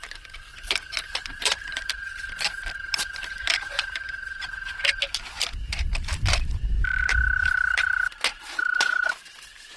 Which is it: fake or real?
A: fake